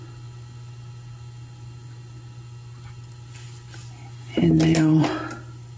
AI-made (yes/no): no